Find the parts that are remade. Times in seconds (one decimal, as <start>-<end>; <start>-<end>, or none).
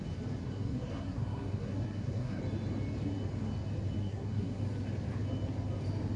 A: 0.4-2.4; 4.0-4.6